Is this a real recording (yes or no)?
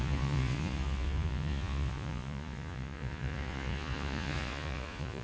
no